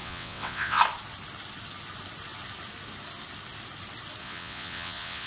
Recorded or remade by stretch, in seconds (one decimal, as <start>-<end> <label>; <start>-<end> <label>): 0.0-0.8 remade; 0.8-4.2 recorded; 4.2-5.3 remade